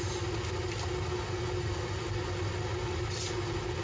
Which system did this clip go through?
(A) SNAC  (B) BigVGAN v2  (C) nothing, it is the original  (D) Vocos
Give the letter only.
C